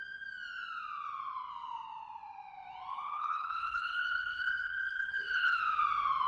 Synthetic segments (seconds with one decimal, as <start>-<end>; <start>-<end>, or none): 2.9-5.6